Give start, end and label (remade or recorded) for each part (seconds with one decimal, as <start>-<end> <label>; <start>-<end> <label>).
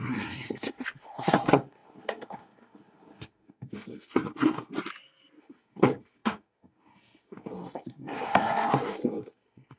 0.0-4.7 remade; 4.7-5.4 recorded; 5.4-9.8 remade